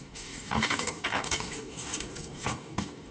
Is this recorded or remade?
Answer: remade